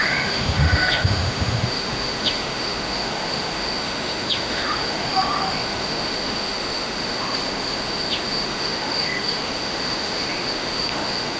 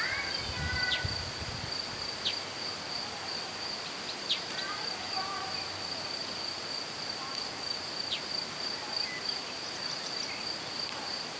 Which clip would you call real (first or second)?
second